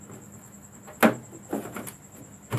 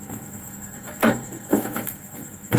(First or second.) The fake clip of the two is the second